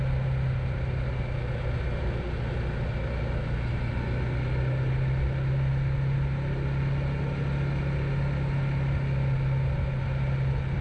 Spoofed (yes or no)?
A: no